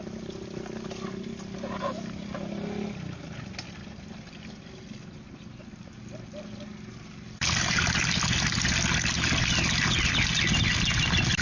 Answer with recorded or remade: recorded